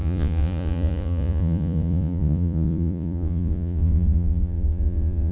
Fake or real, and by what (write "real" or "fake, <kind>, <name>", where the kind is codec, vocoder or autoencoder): fake, vocoder, Vocos